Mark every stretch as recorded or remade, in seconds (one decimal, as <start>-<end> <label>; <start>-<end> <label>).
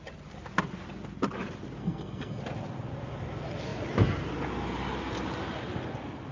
0.0-1.8 recorded; 1.8-2.4 remade; 2.4-6.3 recorded